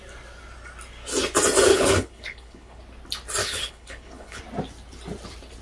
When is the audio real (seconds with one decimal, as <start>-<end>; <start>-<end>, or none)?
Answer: 0.0-1.7; 2.8-3.4; 4.4-5.6